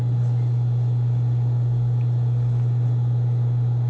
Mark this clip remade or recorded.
recorded